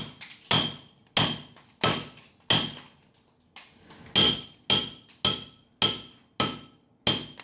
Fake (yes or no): no